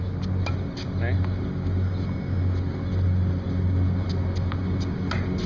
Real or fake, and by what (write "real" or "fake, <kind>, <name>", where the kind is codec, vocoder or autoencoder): real